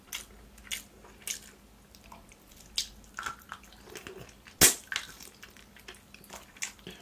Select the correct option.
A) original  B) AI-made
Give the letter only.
A